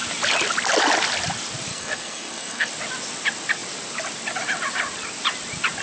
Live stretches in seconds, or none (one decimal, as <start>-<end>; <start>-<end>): 0.0-1.7; 2.7-5.8